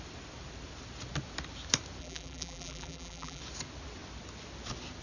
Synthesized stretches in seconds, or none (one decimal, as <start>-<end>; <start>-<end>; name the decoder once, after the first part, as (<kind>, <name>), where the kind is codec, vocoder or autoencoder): 2.0-3.4 (vocoder, BigVGAN v2)